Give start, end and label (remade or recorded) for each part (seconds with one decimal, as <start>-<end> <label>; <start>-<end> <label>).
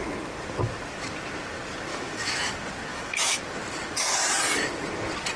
0.0-1.9 recorded; 1.9-2.5 remade; 2.5-2.9 recorded; 2.9-3.4 remade; 3.4-5.4 recorded